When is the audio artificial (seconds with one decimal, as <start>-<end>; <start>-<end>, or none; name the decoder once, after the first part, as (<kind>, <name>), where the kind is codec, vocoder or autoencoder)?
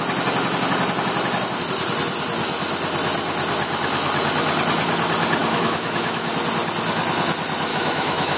5.4-6.3 (autoencoder, DAC-VAE); 7.7-8.4